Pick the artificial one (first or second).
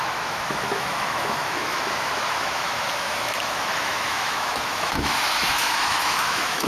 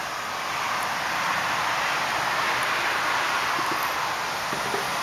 first